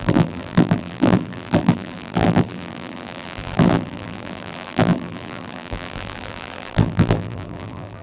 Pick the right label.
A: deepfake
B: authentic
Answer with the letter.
A